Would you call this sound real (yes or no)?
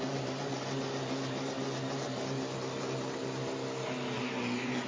yes